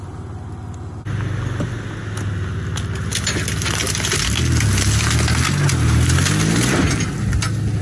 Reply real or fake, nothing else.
real